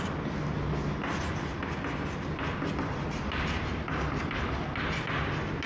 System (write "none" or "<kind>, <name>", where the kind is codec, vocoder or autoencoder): none